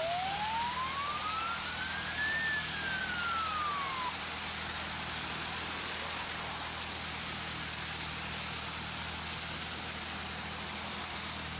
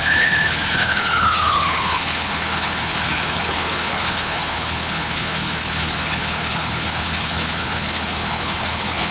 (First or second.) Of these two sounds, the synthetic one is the second